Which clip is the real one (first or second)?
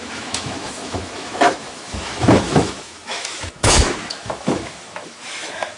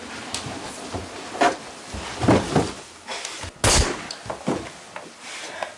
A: second